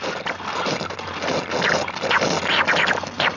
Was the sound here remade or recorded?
recorded